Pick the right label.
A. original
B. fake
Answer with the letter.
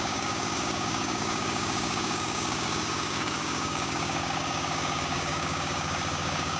B